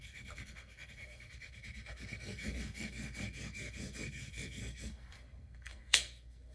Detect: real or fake fake